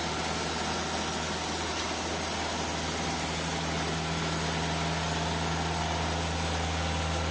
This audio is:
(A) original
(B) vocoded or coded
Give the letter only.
A